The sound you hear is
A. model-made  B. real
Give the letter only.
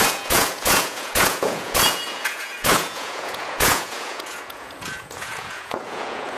A